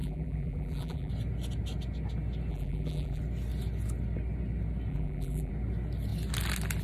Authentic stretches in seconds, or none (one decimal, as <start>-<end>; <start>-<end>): 1.1-2.5; 3.2-4.9; 5.5-6.8

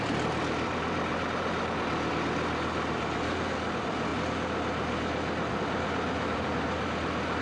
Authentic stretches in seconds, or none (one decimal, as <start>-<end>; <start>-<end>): 1.1-2.1; 4.1-5.6

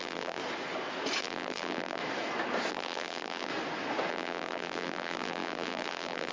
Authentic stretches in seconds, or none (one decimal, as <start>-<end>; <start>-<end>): 0.4-1.2; 2.0-2.7; 3.5-4.1